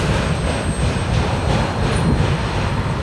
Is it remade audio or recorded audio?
recorded